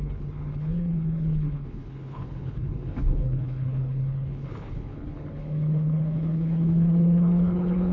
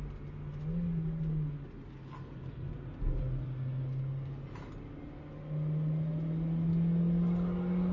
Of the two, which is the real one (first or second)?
second